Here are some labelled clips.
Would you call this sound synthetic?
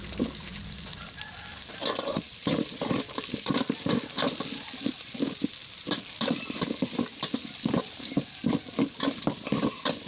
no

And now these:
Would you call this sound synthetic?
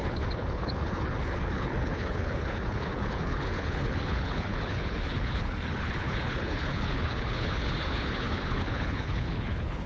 yes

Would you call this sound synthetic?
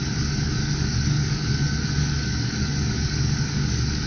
yes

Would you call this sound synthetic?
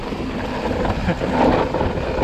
no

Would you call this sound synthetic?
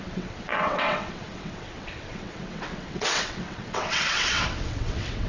yes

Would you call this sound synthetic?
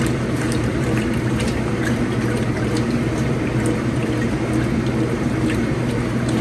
yes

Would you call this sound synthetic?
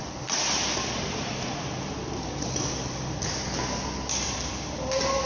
no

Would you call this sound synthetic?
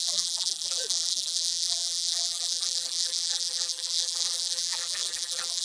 yes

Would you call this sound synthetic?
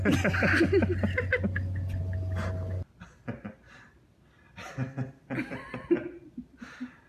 no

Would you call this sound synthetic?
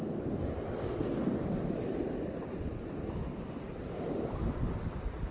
no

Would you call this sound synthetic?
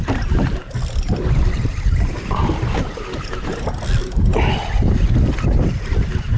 no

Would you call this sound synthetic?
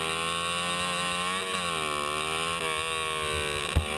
no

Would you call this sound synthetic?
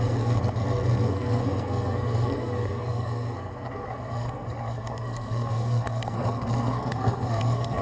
yes